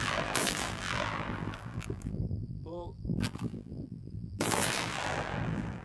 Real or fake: fake